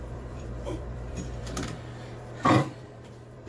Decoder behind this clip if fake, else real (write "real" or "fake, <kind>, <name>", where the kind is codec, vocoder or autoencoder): fake, vocoder, BigVGAN v2